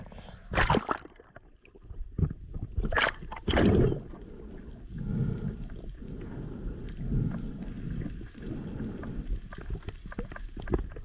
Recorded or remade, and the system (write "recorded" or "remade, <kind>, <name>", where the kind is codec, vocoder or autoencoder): remade, vocoder, BigVGAN v2